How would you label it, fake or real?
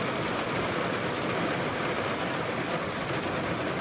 real